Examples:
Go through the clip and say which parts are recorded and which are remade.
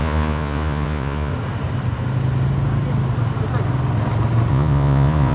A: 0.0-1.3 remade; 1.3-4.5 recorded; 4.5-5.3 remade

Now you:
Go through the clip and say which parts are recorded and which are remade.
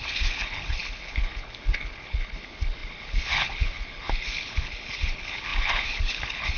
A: 0.0-6.6 remade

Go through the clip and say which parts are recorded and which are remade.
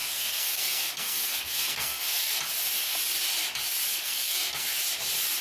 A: 0.0-2.4 remade; 2.4-3.9 recorded; 3.9-4.8 remade; 4.8-5.4 recorded